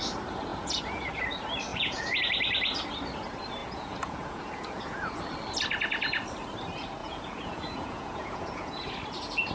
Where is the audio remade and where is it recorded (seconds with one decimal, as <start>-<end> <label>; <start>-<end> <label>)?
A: 0.0-0.5 recorded; 0.5-1.1 remade; 1.1-1.7 recorded; 1.7-2.2 remade; 2.2-3.6 recorded; 3.6-5.2 remade; 5.2-7.0 recorded; 7.0-9.0 remade; 9.0-9.5 recorded